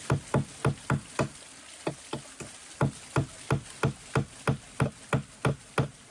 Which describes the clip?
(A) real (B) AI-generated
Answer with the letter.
A